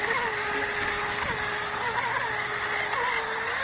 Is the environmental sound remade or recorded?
recorded